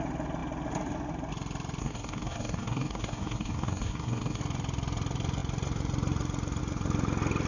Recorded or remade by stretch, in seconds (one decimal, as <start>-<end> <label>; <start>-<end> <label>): 0.0-1.8 recorded; 1.8-4.4 remade; 4.4-7.5 recorded